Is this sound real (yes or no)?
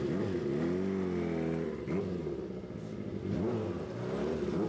yes